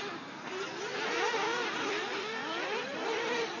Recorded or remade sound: remade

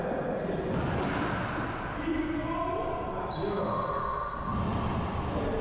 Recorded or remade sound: recorded